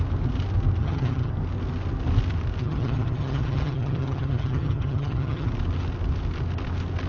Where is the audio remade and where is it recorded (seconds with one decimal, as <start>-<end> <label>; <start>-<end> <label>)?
0.0-0.8 recorded; 0.8-1.3 remade; 1.3-2.6 recorded; 2.6-5.5 remade; 5.5-7.1 recorded